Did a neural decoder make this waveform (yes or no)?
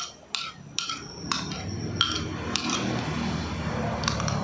no